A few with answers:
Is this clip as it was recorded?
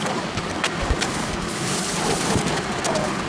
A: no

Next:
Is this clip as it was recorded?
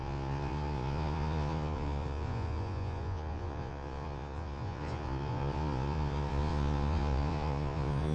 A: no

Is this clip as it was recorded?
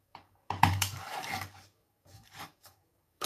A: no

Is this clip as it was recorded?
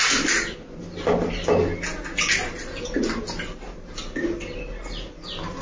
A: yes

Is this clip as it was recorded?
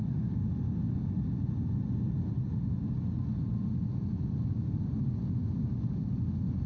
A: yes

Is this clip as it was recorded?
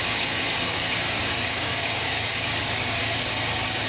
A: no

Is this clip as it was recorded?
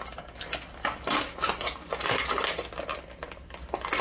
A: yes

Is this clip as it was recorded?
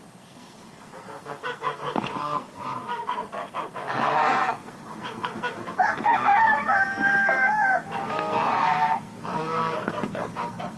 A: no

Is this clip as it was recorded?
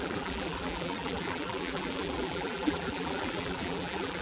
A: no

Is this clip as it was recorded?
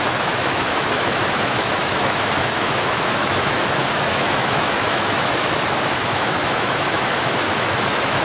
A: no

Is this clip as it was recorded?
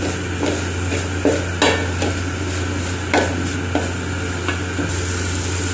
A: yes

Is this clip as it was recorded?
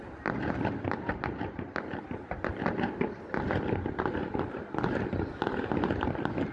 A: yes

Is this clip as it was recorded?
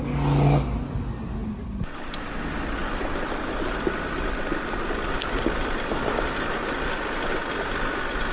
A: yes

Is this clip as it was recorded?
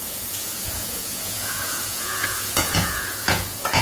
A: no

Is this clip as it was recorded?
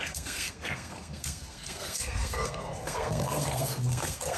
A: no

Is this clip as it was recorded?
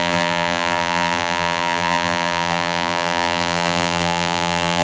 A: no